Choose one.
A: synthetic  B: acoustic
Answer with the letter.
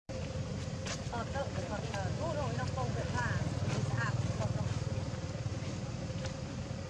A